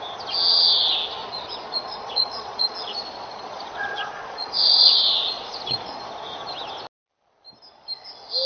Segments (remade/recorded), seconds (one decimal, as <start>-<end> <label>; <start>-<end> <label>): 0.0-1.2 recorded; 1.2-6.0 remade; 6.0-8.5 recorded